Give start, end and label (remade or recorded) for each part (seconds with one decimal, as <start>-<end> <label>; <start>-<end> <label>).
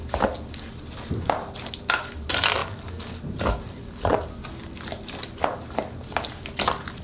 0.0-7.0 recorded